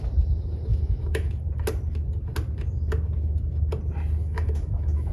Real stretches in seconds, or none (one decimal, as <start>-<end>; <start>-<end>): 0.0-0.7; 1.3-4.2